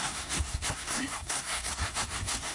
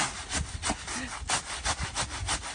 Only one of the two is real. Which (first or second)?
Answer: second